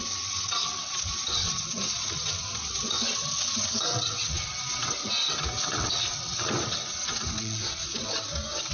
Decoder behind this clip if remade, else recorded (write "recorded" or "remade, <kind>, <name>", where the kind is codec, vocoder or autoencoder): remade, vocoder, WaveNeXt